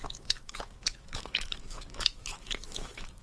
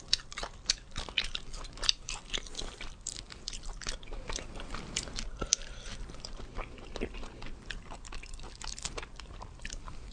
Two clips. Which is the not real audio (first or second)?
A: first